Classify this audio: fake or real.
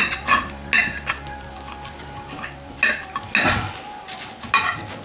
real